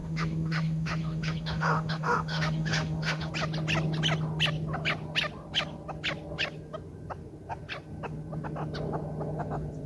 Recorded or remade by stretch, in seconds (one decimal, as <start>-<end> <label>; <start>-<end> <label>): 0.0-3.3 remade; 3.3-9.9 recorded